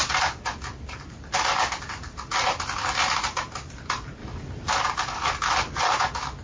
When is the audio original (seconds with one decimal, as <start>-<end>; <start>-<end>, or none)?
0.0-6.4